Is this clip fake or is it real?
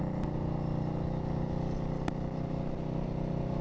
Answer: real